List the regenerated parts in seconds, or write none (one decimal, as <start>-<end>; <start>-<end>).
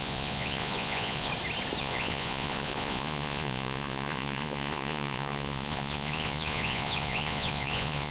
0.0-1.3; 1.8-8.1